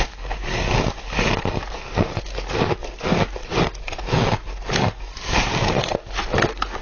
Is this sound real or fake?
real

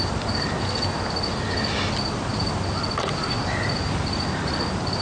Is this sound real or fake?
real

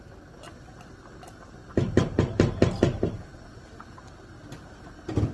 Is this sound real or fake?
real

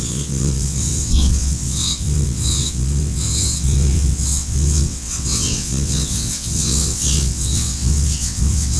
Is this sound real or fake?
fake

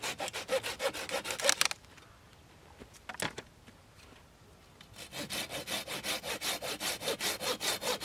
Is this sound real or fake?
real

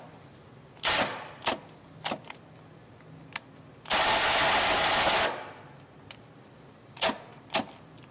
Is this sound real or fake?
real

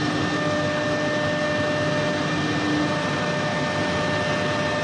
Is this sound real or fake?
real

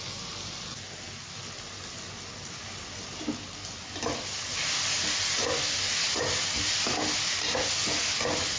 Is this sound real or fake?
real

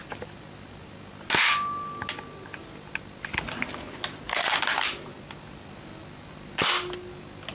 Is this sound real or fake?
real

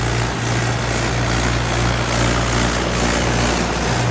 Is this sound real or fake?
real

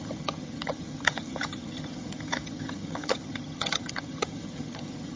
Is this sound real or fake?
fake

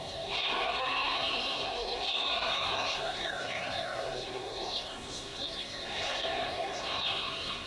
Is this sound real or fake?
fake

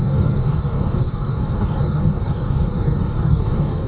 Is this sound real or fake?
fake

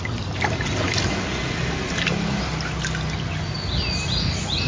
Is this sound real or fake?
real